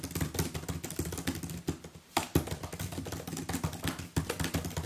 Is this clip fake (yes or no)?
no